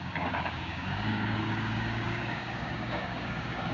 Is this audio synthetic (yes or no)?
yes